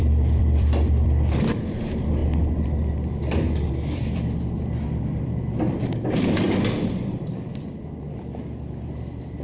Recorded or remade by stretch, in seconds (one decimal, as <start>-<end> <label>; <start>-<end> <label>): 0.0-2.2 remade; 2.2-3.7 recorded; 3.7-9.4 remade